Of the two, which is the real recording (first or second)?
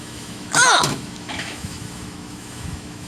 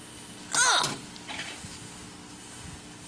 second